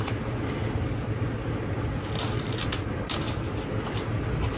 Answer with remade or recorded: recorded